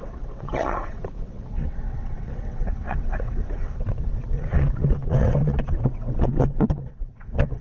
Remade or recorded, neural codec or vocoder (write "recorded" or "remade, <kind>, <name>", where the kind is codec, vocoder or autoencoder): remade, vocoder, WaveNeXt